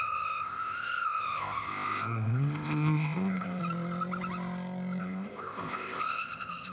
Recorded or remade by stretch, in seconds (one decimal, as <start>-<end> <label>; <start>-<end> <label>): 0.0-3.6 remade; 3.6-5.0 recorded; 5.0-6.7 remade